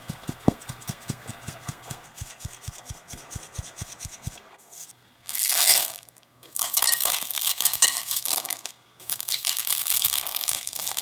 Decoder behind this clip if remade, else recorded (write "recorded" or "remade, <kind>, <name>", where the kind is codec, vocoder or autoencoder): remade, codec, SNAC